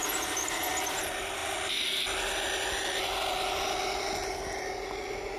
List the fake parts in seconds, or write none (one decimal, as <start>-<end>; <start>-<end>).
none